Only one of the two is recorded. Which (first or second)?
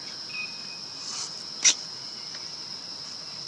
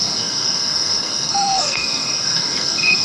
first